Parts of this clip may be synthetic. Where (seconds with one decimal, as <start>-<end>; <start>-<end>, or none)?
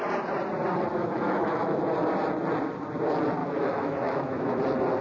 0.9-1.8; 3.4-4.6